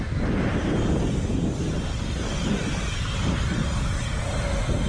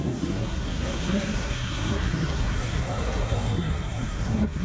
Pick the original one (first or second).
first